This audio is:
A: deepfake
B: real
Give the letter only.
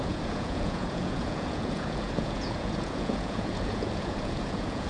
A